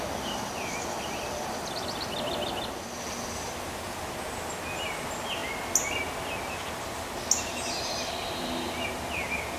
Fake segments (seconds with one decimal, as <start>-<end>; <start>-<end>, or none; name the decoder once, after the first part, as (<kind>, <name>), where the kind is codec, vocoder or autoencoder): none